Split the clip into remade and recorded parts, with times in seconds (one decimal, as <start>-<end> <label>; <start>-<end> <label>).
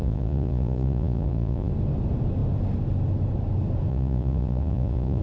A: 0.0-1.7 remade; 1.7-3.9 recorded; 3.9-5.2 remade